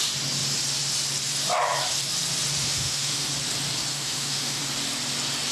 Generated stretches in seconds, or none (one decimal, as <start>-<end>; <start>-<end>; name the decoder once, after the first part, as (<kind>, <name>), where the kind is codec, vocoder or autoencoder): 2.6-3.3 (autoencoder, DAC-VAE); 3.9-4.6